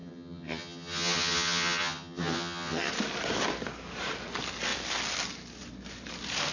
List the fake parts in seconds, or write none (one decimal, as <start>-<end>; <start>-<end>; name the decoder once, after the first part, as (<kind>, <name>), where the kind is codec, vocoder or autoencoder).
0.0-2.9 (vocoder, HiFi-GAN)